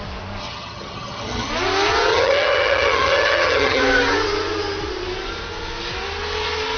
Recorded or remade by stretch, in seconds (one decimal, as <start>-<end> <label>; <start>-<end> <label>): 0.0-0.4 recorded; 0.4-1.5 remade; 1.5-2.1 recorded; 2.1-3.8 remade; 3.8-6.8 recorded

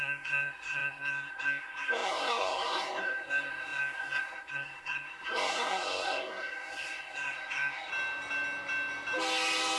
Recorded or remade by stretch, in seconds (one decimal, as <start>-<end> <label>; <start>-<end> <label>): 0.0-7.9 remade; 7.9-9.8 recorded

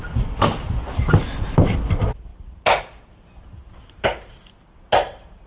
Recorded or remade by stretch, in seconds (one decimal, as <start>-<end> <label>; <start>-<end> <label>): 0.0-5.5 recorded